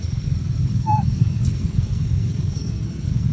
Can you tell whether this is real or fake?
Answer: fake